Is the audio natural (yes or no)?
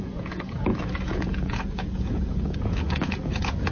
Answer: no